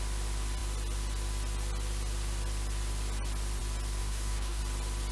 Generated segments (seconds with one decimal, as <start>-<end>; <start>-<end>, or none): 4.0-4.6